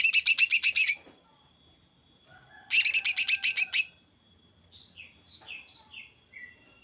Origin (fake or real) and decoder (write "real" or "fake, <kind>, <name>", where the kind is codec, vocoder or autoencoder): real